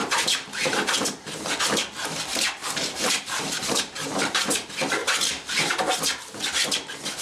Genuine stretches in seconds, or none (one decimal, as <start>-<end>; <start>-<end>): 0.9-2.3; 4.4-5.0; 5.7-7.2